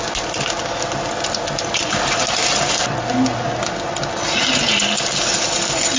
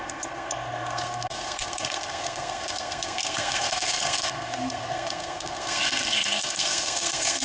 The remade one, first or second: second